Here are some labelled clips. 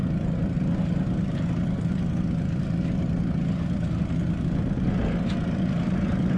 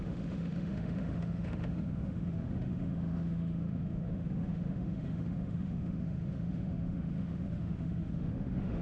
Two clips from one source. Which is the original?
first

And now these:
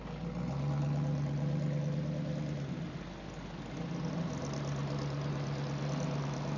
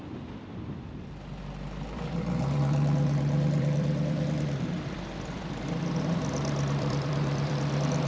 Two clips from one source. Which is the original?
first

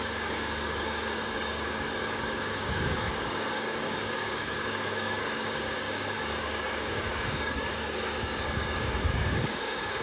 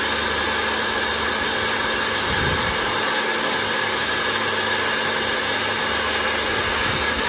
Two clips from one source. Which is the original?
second